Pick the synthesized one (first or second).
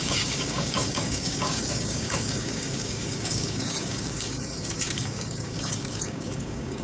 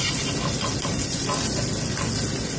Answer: first